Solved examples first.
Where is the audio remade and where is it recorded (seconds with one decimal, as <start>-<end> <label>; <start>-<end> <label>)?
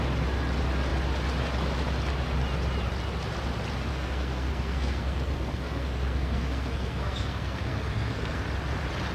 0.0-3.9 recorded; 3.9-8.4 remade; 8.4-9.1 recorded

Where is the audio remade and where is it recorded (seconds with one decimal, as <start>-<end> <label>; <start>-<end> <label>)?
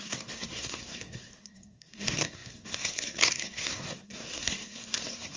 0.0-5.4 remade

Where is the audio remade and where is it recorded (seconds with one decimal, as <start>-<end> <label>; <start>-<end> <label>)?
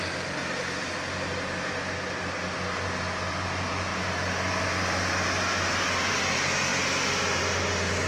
0.0-8.1 recorded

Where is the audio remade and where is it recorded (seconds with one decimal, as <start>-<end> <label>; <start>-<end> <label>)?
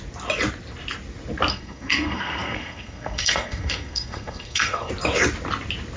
0.0-1.5 recorded; 1.5-4.9 remade; 4.9-6.0 recorded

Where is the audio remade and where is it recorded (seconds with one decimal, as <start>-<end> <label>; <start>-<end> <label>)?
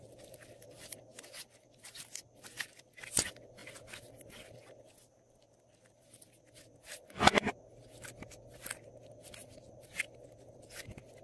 0.0-11.2 recorded